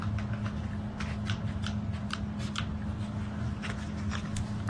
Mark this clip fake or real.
real